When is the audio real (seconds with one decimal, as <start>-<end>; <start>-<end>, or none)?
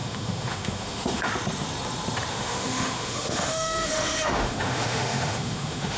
1.3-2.3